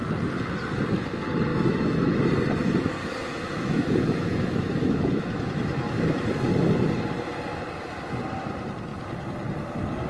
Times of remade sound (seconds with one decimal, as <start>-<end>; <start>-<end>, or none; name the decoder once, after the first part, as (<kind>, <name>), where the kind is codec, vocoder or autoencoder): 1.5-2.2 (autoencoder, DAC-VAE); 3.0-6.3